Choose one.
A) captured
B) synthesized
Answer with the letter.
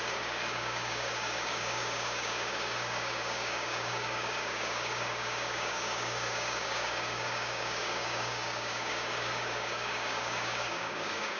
B